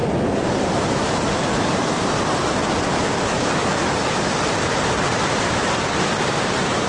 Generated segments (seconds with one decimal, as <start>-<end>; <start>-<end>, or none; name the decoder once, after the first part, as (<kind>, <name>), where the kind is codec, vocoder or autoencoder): 0.0-2.6 (vocoder, BigVGAN v2); 4.2-6.9